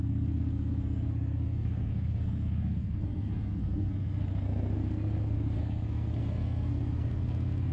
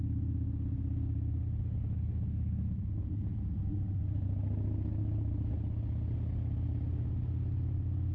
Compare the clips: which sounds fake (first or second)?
first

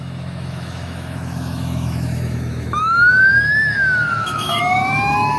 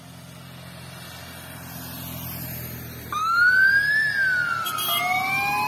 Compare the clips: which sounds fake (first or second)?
first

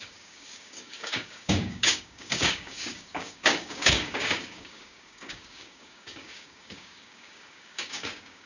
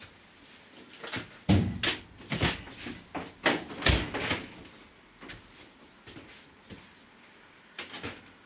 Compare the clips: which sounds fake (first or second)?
first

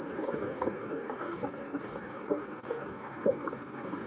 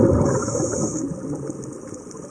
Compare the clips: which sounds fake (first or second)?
first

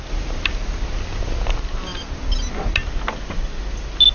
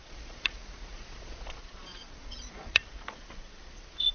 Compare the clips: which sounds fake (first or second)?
second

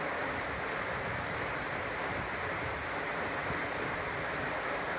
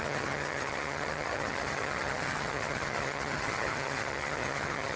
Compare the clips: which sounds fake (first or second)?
second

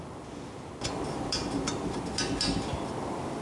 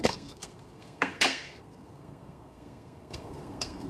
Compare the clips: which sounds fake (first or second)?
second